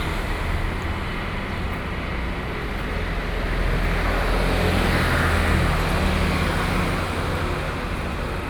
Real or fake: real